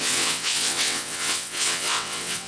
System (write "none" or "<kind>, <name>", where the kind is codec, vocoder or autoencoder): vocoder, WaveNeXt